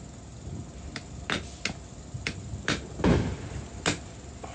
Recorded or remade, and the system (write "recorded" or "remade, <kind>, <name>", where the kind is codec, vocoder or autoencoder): recorded